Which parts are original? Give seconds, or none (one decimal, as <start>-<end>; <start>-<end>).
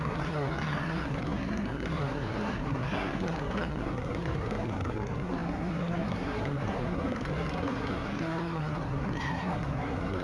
none